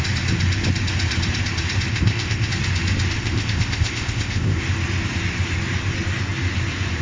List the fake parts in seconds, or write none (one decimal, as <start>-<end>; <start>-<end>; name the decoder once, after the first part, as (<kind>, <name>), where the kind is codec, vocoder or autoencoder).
1.9-2.5 (codec, ZipCodec); 3.2-4.6